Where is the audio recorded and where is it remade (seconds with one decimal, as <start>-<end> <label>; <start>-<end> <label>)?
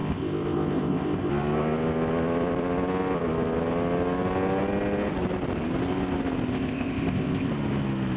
0.0-1.3 remade; 1.3-6.5 recorded; 6.5-7.5 remade; 7.5-8.2 recorded